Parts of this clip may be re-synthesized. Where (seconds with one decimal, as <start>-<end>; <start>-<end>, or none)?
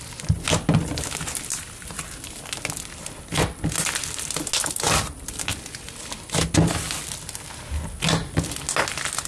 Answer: none